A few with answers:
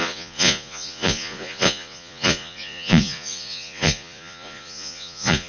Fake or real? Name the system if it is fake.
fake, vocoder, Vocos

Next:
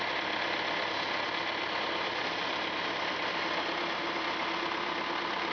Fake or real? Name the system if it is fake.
real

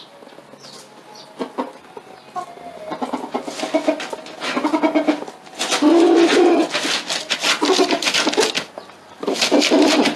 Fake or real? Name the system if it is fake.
real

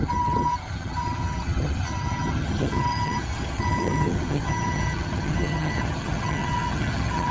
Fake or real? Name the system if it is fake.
fake, vocoder, HiFi-GAN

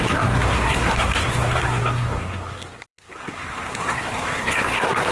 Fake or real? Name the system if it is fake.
fake, codec, SNAC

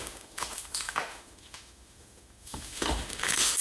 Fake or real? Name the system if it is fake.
fake, autoencoder, DAC-VAE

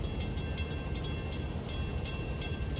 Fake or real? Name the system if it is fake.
real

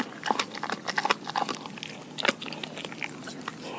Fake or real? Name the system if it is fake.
real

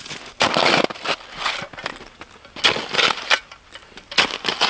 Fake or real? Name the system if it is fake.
real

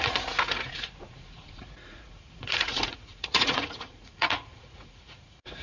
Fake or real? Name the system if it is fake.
fake, vocoder, Vocos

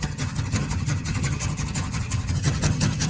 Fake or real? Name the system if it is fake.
fake, vocoder, HiFi-GAN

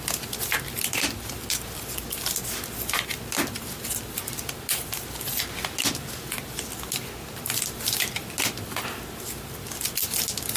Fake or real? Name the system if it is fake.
real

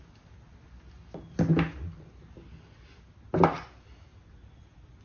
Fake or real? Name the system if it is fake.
real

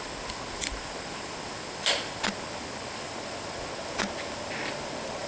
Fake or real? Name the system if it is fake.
real